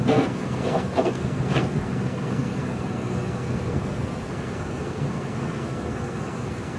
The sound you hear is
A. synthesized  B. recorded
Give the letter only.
A